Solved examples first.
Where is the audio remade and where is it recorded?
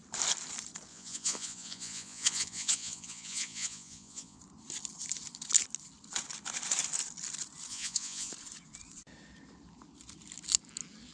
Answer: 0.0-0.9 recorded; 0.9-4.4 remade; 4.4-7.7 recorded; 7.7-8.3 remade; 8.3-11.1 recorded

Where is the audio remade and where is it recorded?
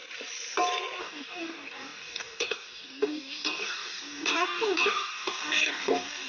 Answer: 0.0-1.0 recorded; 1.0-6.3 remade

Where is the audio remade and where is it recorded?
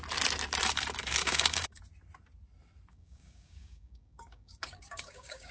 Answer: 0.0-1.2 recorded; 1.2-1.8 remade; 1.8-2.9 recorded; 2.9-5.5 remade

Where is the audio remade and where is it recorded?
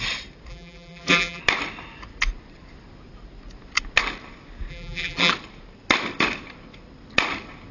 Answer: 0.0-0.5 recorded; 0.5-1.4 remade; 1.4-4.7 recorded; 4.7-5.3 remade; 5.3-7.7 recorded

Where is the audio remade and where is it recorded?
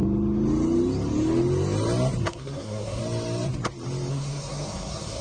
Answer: 0.0-2.2 recorded; 2.2-3.0 remade; 3.0-4.1 recorded; 4.1-5.2 remade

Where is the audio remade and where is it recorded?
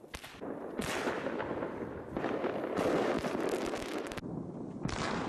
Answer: 0.0-0.8 recorded; 0.8-3.7 remade; 3.7-5.3 recorded